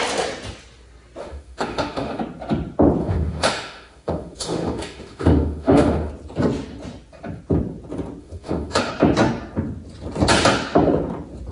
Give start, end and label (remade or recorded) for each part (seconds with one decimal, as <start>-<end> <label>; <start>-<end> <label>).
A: 0.0-1.2 recorded; 1.2-2.2 remade; 2.2-3.0 recorded; 3.0-6.1 remade; 6.1-8.2 recorded; 8.2-8.9 remade; 8.9-11.5 recorded